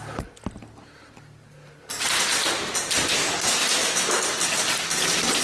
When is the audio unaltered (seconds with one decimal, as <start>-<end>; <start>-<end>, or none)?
0.0-3.6; 4.2-5.4